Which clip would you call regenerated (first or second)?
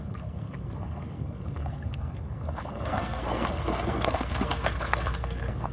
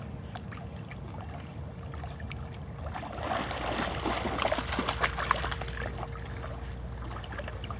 first